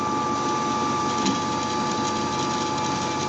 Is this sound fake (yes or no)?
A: no